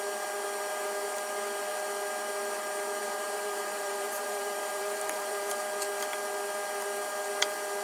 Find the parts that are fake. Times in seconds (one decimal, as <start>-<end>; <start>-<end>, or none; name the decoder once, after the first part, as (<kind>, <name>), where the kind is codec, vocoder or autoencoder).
3.0-5.6 (vocoder, BigVGAN v2)